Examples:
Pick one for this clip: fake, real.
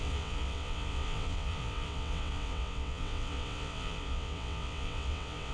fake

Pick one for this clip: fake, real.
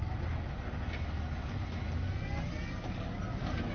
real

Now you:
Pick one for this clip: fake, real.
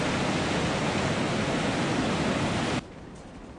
real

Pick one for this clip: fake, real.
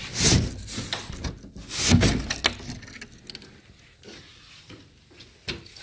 real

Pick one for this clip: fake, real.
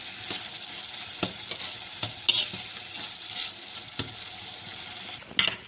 real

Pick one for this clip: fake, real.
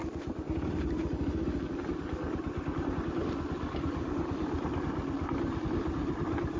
real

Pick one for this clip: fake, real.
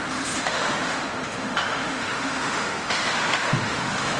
fake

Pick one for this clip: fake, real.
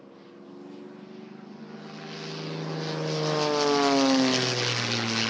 real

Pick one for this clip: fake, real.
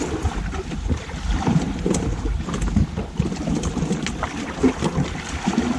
real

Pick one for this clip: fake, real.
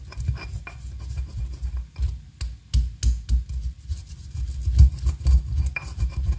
real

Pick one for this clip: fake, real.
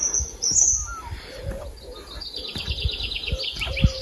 real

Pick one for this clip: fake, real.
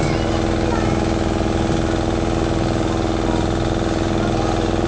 real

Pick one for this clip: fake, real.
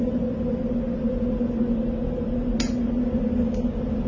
real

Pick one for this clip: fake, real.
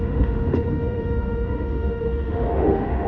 fake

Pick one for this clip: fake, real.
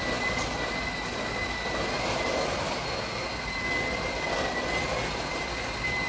real